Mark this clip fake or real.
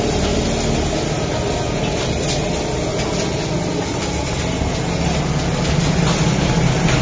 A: real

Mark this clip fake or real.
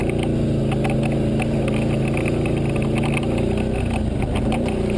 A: real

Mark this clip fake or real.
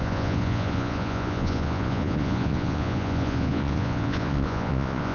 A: fake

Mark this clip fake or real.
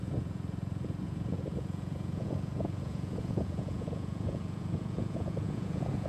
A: fake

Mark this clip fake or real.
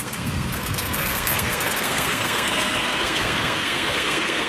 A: fake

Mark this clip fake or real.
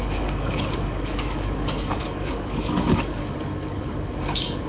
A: fake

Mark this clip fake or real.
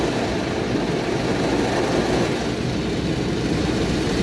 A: real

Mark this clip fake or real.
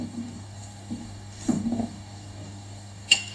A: fake